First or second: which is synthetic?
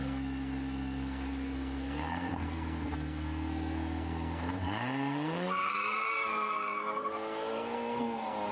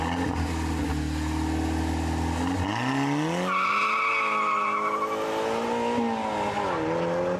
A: first